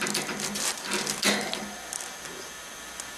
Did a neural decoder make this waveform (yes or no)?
no